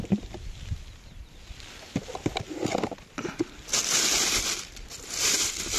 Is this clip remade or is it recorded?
recorded